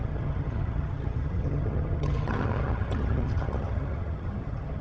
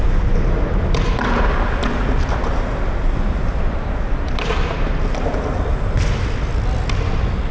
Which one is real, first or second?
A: second